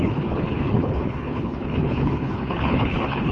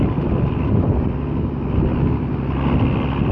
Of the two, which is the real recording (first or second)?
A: second